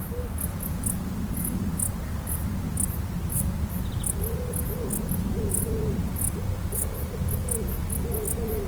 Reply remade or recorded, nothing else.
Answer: recorded